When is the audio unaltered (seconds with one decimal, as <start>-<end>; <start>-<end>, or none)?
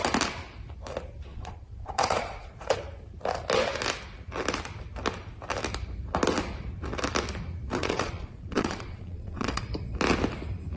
0.0-1.3; 2.8-7.8; 9.7-10.8